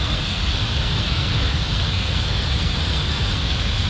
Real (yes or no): no